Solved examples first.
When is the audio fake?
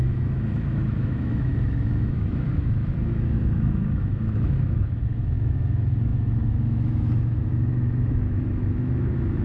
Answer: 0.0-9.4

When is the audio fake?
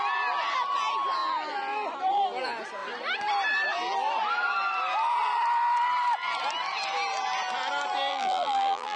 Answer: 8.1-9.0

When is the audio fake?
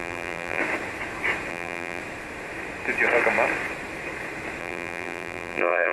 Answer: 0.0-0.6; 1.5-2.0; 4.6-5.9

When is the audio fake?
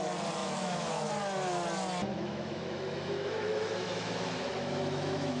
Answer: 0.4-1.1; 2.1-5.4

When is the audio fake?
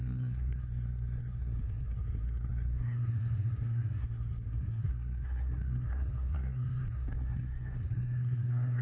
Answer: 0.0-8.8